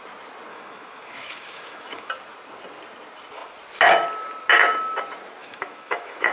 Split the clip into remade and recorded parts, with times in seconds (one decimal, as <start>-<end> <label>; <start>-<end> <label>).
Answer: 0.0-0.5 recorded; 0.5-2.1 remade; 2.1-5.4 recorded; 5.4-6.3 remade